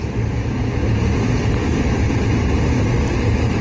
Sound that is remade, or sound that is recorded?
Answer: recorded